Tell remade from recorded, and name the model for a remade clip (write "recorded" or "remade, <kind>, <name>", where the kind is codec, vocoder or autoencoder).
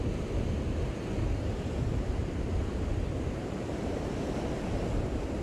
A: recorded